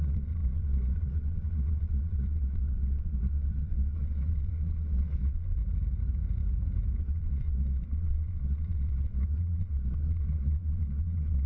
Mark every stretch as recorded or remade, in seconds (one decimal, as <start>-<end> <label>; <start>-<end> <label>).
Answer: 0.0-5.6 remade; 5.6-7.0 recorded; 7.0-11.5 remade